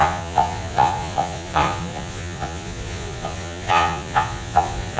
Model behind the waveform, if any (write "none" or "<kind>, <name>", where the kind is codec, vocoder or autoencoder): vocoder, Vocos